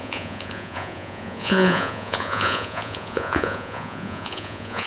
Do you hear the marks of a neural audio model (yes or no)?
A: yes